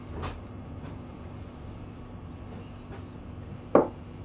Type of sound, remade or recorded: recorded